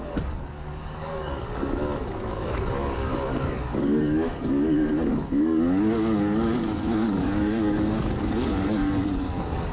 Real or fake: fake